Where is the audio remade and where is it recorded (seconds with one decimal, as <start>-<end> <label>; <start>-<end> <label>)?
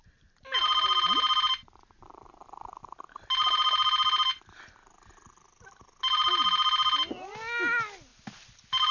0.0-8.9 recorded